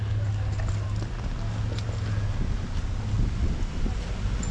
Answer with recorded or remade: recorded